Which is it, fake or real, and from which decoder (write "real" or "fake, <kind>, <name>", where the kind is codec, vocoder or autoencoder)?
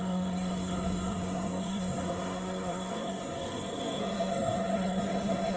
fake, codec, SNAC